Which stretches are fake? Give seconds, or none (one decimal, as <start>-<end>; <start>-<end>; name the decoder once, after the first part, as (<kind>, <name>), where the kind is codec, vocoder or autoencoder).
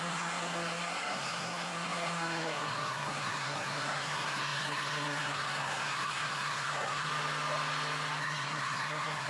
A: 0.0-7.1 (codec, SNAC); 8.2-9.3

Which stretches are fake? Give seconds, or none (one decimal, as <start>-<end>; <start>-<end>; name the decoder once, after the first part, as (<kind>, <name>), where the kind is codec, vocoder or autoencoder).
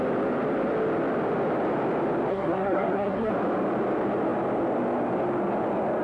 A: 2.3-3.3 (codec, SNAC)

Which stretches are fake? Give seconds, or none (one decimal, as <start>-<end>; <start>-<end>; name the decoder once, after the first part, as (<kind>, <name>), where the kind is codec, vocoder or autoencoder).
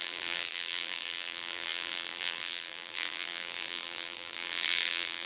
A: 0.0-5.3 (vocoder, BigVGAN v2)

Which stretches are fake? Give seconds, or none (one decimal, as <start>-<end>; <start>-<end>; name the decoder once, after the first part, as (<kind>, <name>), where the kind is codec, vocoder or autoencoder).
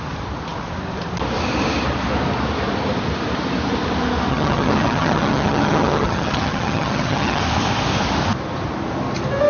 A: 4.3-7.4 (vocoder, HiFi-GAN)